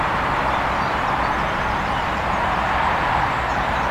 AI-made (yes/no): no